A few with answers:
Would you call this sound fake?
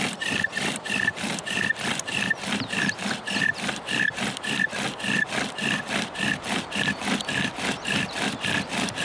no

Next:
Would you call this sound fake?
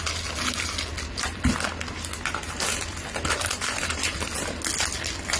no